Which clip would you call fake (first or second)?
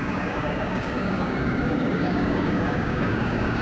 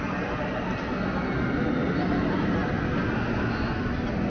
first